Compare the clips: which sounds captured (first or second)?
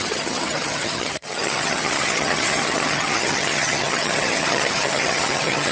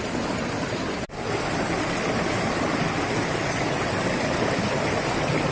second